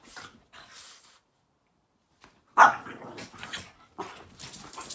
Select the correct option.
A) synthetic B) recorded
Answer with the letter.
B